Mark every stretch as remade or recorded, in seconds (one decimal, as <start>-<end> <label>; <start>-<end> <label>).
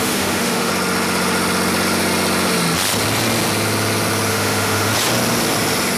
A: 0.0-0.7 remade; 0.7-4.3 recorded; 4.3-4.9 remade; 4.9-6.0 recorded